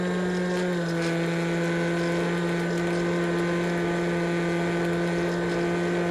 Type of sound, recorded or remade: recorded